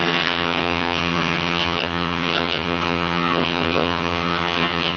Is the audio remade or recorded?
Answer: remade